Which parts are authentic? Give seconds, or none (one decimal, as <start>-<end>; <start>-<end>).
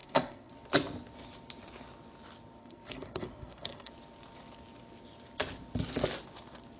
0.5-2.6; 3.9-6.8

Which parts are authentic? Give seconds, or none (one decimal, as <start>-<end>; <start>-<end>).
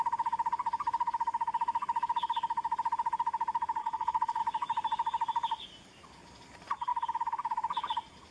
0.0-3.8; 4.4-8.3